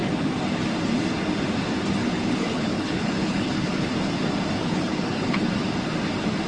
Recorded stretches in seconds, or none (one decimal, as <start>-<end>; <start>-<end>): 0.0-2.0; 3.9-4.6; 5.5-6.5